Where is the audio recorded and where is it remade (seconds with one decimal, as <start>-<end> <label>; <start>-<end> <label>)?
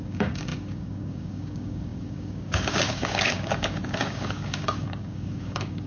0.0-5.9 remade